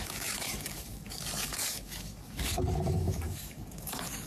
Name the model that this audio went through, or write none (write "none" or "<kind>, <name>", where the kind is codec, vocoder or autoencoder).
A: codec, DAC